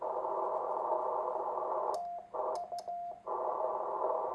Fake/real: real